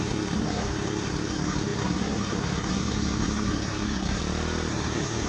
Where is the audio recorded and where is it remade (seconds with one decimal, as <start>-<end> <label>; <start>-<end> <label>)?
0.0-4.2 remade; 4.2-4.7 recorded; 4.7-5.3 remade